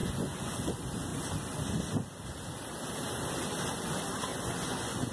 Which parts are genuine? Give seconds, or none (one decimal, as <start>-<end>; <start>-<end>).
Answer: 0.7-4.3